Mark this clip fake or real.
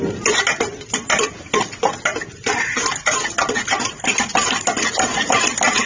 real